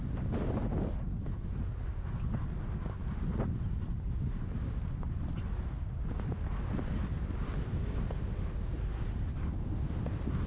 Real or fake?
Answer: real